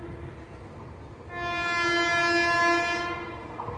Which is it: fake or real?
real